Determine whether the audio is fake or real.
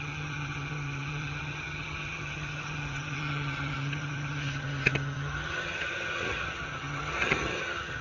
fake